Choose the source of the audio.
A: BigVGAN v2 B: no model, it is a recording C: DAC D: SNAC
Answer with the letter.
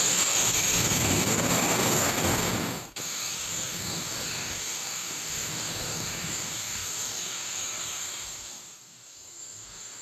C